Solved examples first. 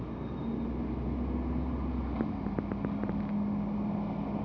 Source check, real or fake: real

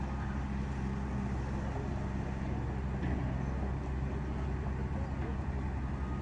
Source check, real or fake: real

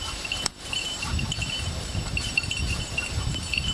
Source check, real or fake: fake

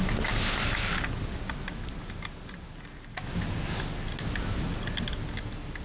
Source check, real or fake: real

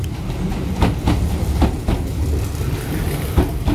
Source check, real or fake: real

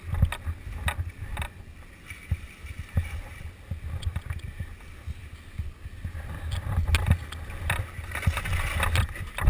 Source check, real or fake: real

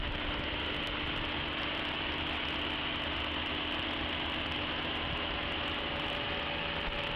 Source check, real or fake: real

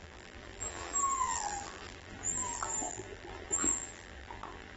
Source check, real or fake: fake